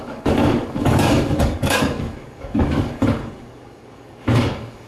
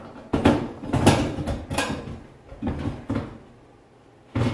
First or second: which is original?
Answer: second